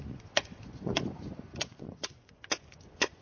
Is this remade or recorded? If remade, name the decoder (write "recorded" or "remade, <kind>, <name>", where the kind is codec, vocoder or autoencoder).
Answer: remade, vocoder, Vocos